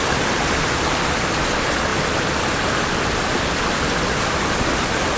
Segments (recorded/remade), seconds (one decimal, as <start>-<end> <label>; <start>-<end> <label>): 0.0-5.2 recorded